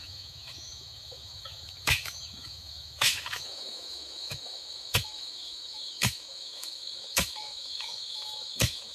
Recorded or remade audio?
remade